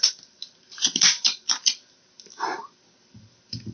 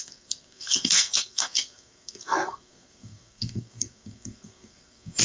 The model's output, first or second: second